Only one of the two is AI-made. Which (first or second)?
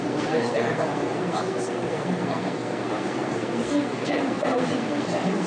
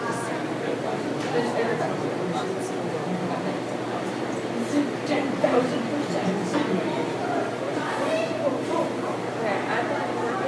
first